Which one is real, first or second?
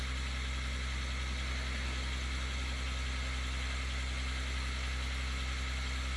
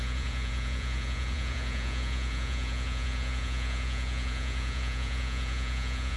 first